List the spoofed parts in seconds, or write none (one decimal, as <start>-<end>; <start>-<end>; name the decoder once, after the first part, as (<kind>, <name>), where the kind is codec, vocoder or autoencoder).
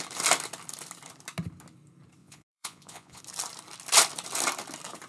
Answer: 2.2-3.2 (vocoder, Vocos)